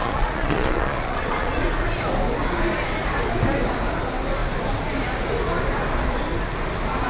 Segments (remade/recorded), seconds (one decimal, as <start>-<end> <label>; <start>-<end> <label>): 0.0-1.6 remade; 1.6-7.1 recorded

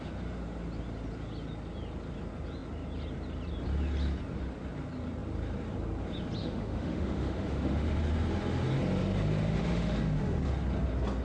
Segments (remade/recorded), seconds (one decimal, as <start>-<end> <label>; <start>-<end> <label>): 0.0-6.4 recorded; 6.4-8.0 remade; 8.0-9.5 recorded; 9.5-10.2 remade; 10.2-11.2 recorded

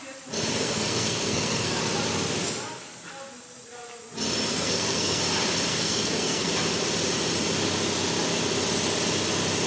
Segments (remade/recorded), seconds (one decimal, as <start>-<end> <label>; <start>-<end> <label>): 0.0-0.5 recorded; 0.5-1.8 remade; 1.8-4.5 recorded; 4.5-5.2 remade; 5.2-5.7 recorded; 5.7-6.5 remade; 6.5-9.7 recorded

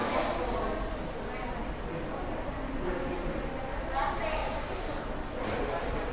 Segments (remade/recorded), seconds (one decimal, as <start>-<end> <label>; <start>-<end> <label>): 0.0-2.1 recorded; 2.1-6.1 remade